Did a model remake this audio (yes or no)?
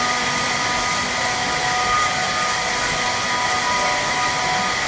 no